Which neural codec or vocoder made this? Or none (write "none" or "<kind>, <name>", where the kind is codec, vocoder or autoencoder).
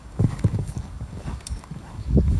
codec, DAC